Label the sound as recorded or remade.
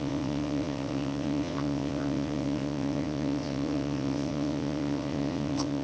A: remade